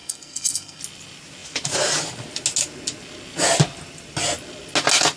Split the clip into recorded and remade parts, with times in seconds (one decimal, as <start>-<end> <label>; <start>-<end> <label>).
0.0-0.8 remade; 0.8-5.2 recorded